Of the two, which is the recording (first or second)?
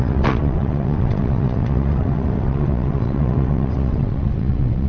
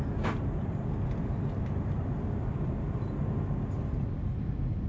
second